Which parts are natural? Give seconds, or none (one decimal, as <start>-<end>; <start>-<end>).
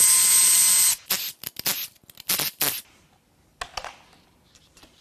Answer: 0.0-5.0